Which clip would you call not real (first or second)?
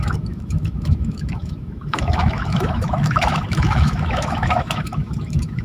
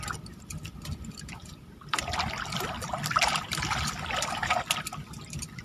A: first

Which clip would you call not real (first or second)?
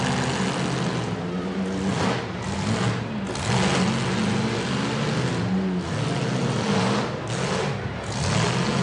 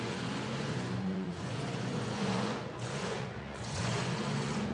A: second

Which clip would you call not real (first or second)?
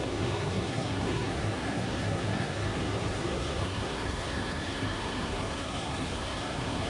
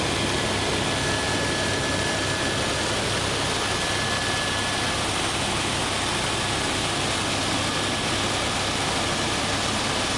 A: first